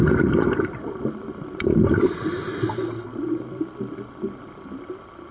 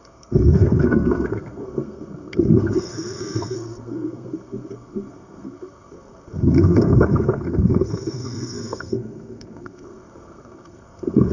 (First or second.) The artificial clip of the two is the second